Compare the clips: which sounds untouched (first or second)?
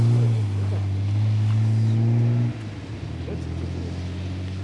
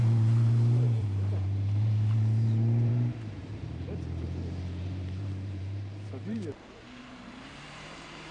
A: first